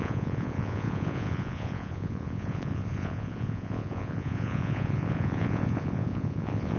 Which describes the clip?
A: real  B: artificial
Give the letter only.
B